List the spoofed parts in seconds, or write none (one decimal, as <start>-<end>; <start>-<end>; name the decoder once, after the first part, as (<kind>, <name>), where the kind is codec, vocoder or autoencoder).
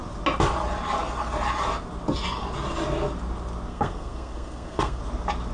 3.7-5.0 (codec, SNAC)